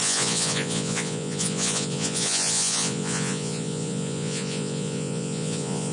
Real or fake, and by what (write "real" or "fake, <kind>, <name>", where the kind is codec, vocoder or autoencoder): fake, vocoder, Vocos